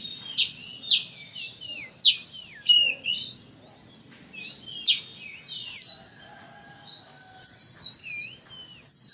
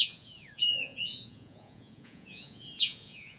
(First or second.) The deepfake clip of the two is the second